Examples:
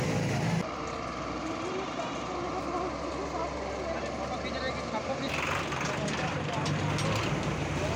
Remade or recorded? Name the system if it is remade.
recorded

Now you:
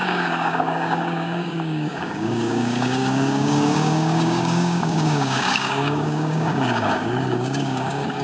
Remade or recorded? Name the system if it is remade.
remade, codec, DAC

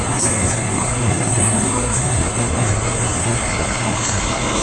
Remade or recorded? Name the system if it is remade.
remade, codec, SNAC